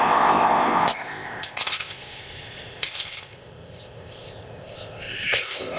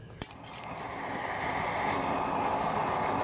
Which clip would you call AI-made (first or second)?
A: first